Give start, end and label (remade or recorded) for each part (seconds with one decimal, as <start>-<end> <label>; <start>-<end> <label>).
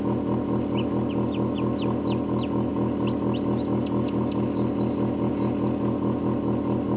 0.0-7.0 recorded